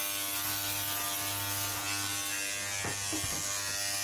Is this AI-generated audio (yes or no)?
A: no